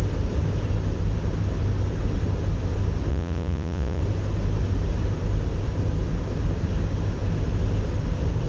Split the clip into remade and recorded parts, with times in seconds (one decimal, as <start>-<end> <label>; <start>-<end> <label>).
0.0-3.1 recorded; 3.1-4.0 remade; 4.0-8.5 recorded